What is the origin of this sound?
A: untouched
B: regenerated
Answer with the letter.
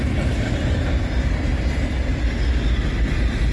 A